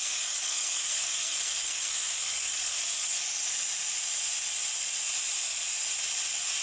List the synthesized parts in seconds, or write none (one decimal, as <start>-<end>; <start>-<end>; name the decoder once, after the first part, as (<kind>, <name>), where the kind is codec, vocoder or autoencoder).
0.0-2.5 (codec, SNAC)